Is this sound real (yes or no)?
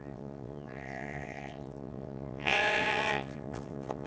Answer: no